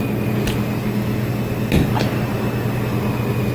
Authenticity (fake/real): real